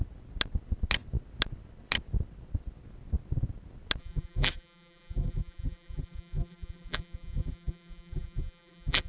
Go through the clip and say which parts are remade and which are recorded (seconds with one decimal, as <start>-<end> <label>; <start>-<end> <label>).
0.0-4.0 recorded; 4.0-9.1 remade